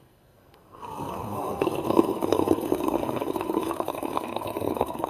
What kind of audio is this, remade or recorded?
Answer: remade